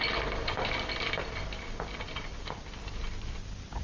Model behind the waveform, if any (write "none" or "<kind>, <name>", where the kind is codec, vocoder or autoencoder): none